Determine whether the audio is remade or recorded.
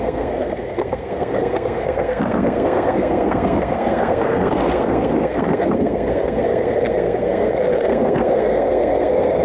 remade